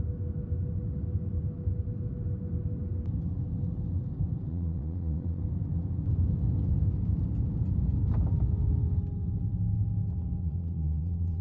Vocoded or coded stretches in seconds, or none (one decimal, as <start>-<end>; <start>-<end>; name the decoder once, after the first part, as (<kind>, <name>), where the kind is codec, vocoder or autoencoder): 4.5-5.4 (vocoder, Vocos); 10.4-11.4